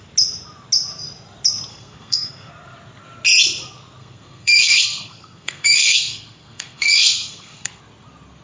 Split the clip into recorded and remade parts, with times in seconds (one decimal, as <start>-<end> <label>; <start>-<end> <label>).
0.0-1.7 recorded; 1.7-2.5 remade; 2.5-4.0 recorded; 4.0-7.8 remade; 7.8-8.4 recorded